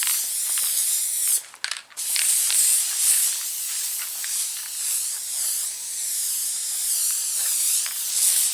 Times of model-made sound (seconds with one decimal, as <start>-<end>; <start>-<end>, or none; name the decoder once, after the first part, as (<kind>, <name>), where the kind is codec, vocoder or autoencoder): 6.8-8.1 (vocoder, BigVGAN v2)